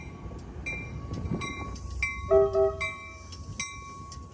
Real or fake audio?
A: real